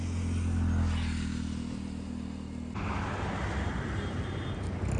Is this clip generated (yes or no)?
no